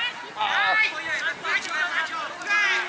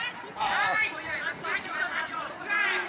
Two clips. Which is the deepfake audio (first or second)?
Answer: second